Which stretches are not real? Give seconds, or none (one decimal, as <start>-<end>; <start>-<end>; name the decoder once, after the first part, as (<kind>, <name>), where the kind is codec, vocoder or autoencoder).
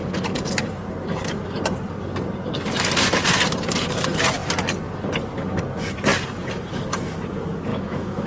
7.7-8.3 (autoencoder, DAC-VAE)